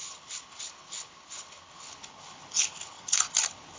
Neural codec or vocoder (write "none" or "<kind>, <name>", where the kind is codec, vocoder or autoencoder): codec, HILCodec